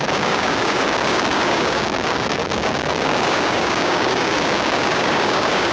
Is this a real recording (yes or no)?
no